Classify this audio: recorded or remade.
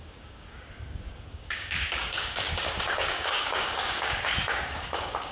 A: remade